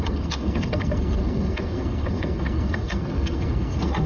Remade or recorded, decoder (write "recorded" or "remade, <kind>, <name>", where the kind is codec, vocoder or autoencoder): remade, codec, SNAC